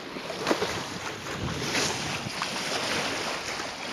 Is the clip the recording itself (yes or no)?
yes